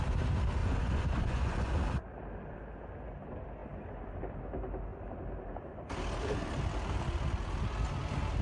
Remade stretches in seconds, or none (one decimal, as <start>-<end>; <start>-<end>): 0.6-1.7